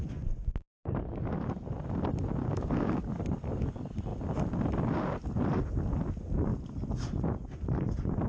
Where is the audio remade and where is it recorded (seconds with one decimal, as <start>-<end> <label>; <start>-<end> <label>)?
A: 0.0-2.4 recorded; 2.4-3.1 remade; 3.1-8.3 recorded